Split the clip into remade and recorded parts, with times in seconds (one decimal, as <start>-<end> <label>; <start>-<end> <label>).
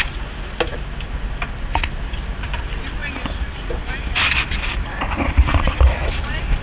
0.0-3.0 recorded; 3.0-6.1 remade; 6.1-6.6 recorded